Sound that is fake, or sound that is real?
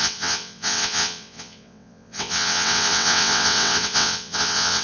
fake